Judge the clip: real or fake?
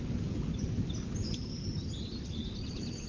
real